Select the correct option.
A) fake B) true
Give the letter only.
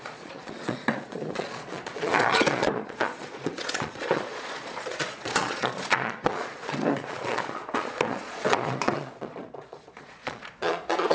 A